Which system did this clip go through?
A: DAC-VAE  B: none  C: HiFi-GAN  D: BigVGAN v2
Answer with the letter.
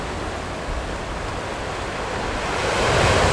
B